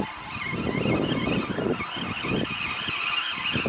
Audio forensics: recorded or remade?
recorded